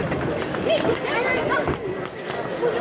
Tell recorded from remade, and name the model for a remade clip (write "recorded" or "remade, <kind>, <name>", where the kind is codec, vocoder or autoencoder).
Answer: recorded